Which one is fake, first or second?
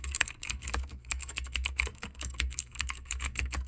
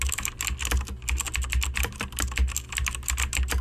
first